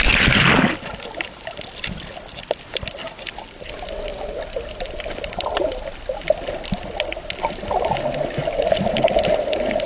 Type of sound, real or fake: real